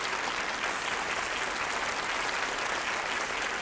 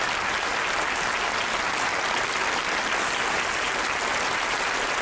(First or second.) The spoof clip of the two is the second